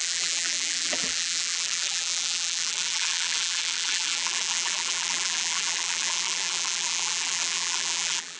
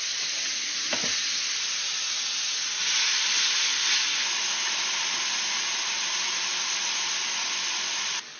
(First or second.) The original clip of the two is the second